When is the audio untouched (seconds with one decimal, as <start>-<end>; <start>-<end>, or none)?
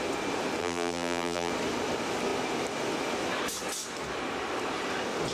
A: 0.0-0.6; 1.5-5.3